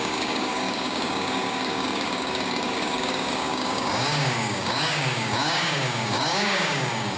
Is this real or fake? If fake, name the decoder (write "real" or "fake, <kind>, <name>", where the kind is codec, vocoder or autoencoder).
fake, codec, DAC